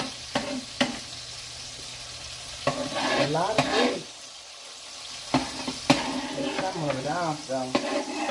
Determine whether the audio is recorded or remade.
recorded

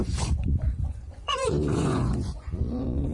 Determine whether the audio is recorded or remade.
remade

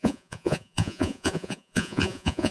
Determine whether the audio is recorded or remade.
remade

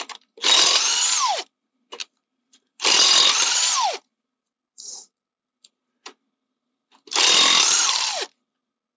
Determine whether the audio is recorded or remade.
recorded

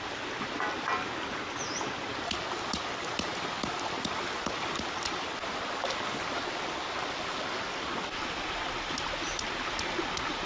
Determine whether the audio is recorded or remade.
recorded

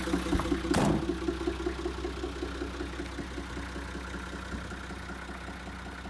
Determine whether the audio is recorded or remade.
recorded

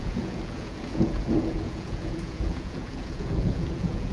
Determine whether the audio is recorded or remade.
remade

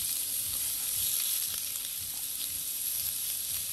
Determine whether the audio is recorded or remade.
recorded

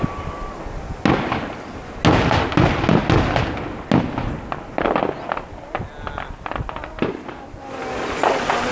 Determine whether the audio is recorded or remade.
recorded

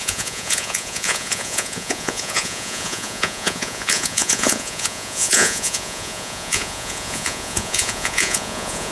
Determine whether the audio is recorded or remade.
remade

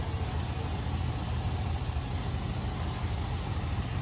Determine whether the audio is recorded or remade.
recorded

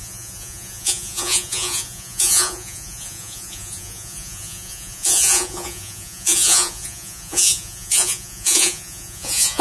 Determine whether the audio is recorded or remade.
remade